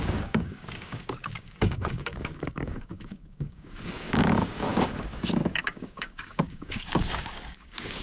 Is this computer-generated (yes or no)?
yes